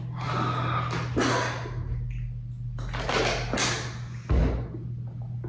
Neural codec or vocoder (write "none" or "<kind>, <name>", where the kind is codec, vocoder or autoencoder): none